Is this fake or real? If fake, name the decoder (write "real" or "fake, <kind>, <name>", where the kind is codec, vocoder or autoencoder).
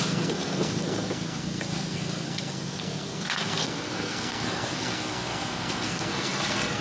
fake, codec, SNAC